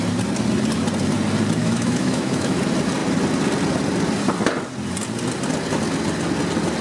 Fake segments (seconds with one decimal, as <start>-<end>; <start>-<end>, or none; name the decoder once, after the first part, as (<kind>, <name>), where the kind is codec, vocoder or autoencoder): 1.6-2.6 (autoencoder, DAC-VAE)